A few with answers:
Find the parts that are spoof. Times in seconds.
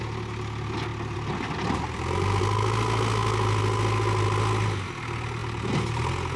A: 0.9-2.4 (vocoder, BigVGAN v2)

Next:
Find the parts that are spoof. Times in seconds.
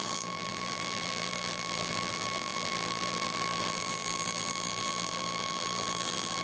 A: 0.0-6.4 (vocoder, BigVGAN v2)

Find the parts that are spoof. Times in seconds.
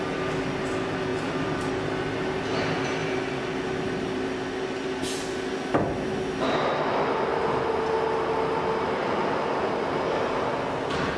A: 1.1-1.7 (vocoder, BigVGAN v2); 3.0-5.0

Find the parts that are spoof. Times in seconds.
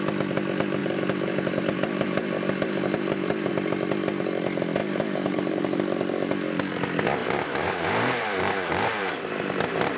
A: 0.8-3.5 (vocoder, BigVGAN v2); 4.8-5.8; 7.2-10.0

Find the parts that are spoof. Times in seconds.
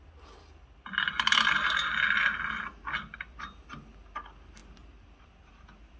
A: 4.6-6.0 (vocoder, BigVGAN v2)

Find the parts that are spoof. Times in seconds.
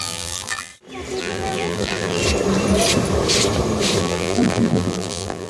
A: 0.0-0.7 (vocoder, BigVGAN v2); 1.2-2.2; 4.0-5.5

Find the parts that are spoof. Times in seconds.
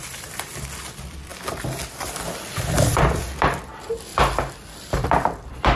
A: 0.0-1.3 (vocoder, BigVGAN v2); 1.9-4.1; 4.7-5.8